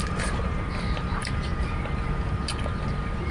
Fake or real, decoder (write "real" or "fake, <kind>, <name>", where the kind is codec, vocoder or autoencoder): fake, vocoder, BigVGAN v2